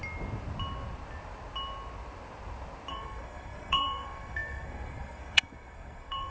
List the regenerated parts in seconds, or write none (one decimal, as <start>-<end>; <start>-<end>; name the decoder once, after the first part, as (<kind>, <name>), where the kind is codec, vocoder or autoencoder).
2.9-6.3 (codec, SNAC)